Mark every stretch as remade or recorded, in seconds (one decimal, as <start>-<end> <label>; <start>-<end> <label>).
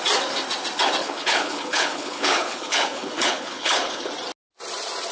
0.0-1.0 recorded; 1.0-4.1 remade; 4.1-5.1 recorded